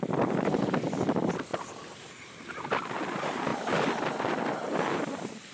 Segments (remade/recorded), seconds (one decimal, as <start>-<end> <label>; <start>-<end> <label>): 0.0-5.5 recorded